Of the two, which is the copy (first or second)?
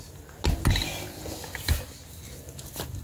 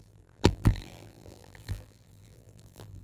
second